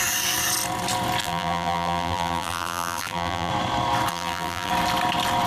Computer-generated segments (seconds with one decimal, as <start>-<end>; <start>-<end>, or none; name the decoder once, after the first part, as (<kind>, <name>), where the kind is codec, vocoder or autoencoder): 1.2-3.5 (vocoder, BigVGAN v2); 4.1-4.7